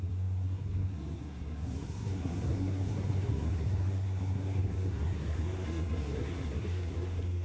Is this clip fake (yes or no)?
yes